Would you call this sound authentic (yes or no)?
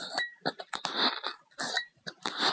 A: no